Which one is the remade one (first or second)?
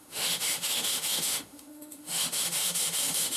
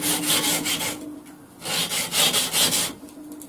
first